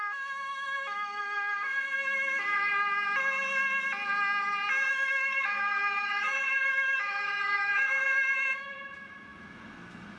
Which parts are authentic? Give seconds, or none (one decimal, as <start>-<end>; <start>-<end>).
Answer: 2.7-4.9